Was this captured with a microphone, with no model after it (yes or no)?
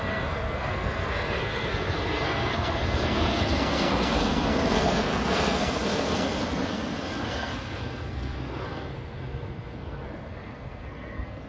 no